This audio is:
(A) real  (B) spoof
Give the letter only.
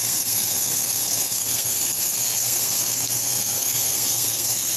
B